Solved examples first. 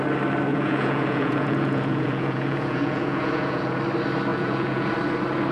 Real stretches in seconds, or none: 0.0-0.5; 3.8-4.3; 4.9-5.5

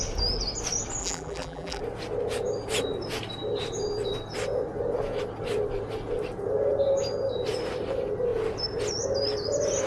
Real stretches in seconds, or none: 0.0-1.0; 1.8-9.9

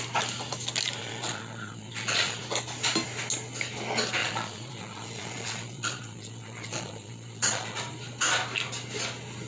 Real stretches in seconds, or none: 0.0-1.0; 2.4-4.2; 7.8-9.5

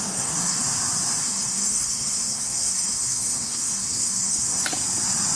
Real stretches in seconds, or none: 0.6-1.2; 4.6-5.4

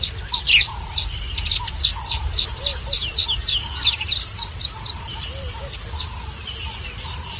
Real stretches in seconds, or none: 0.0-7.4